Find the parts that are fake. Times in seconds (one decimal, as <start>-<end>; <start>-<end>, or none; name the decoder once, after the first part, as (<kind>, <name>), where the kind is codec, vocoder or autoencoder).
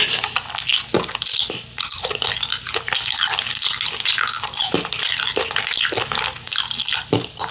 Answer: none